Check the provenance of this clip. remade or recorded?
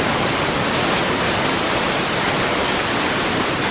recorded